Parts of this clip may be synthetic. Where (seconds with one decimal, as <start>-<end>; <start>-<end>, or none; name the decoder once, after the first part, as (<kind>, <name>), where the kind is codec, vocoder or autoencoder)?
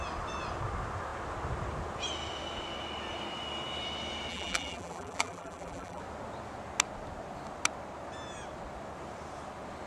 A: 4.3-6.0 (vocoder, BigVGAN v2)